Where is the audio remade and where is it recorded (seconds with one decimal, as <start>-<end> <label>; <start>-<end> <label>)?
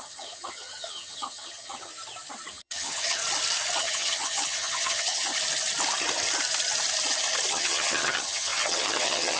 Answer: 0.0-1.9 remade; 1.9-2.5 recorded; 2.5-3.2 remade; 3.2-3.8 recorded; 3.8-5.3 remade; 5.3-7.5 recorded; 7.5-9.4 remade